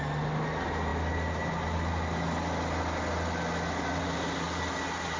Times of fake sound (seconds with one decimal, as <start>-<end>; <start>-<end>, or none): none